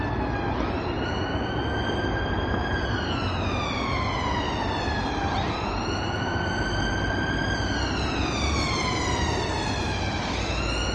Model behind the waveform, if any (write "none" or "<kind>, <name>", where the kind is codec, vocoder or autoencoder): none